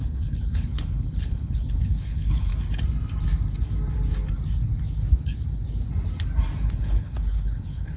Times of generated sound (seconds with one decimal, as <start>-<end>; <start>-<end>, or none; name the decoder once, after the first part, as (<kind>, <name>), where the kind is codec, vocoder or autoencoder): 0.0-2.5 (codec, HILCodec); 6.7-8.0